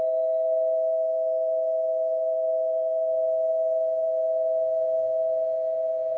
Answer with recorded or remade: remade